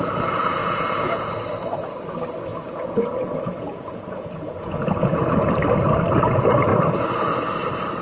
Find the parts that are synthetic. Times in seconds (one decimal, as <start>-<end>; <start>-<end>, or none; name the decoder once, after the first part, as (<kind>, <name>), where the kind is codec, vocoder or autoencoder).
0.6-1.3 (vocoder, Vocos); 2.5-5.5